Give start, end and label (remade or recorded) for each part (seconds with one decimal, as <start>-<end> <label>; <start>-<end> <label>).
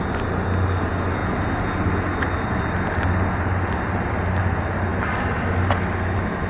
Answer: 0.0-6.5 recorded